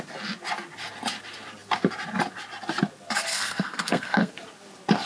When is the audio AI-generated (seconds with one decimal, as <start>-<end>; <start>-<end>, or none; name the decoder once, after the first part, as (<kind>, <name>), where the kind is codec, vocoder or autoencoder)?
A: 3.3-4.3 (codec, SNAC)